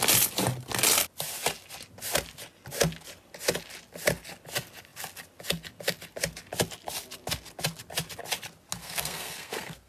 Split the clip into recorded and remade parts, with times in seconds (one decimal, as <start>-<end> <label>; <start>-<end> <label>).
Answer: 0.0-8.8 recorded; 8.8-9.9 remade